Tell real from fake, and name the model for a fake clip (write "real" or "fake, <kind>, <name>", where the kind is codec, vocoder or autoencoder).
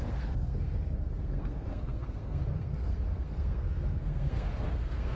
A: fake, codec, SNAC